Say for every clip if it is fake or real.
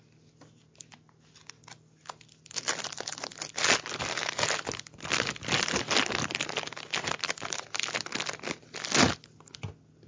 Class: real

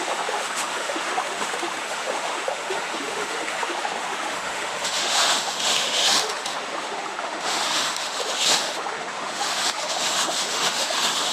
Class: fake